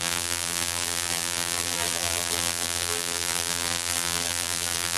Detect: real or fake fake